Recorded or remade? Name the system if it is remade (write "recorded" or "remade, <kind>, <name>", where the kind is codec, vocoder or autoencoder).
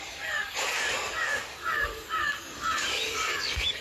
remade, codec, DAC